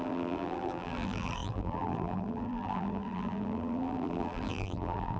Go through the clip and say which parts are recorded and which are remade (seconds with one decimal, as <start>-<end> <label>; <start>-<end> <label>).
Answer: 0.0-5.2 remade